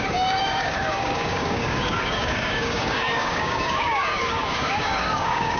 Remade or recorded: remade